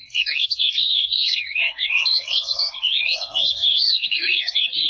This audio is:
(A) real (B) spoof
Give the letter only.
B